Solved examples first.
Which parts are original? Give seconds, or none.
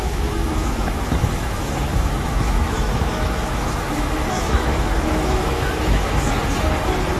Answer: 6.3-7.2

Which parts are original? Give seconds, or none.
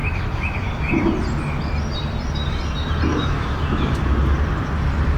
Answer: 1.1-3.1; 4.2-5.2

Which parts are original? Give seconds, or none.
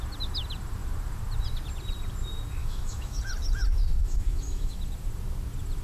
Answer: 0.0-2.6; 3.2-4.0; 4.8-5.8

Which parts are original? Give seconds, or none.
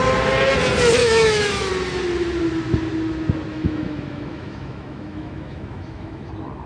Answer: 0.0-1.0; 1.7-3.5; 6.3-6.7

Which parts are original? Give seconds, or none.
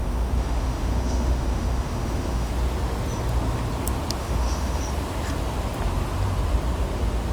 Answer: 2.5-4.2; 4.8-7.3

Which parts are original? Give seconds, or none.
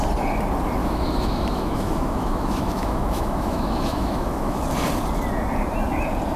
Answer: 0.0-0.8; 4.6-6.4